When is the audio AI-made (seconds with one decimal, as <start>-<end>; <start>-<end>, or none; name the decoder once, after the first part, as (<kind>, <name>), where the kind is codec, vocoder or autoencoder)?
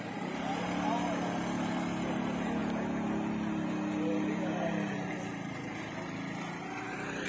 none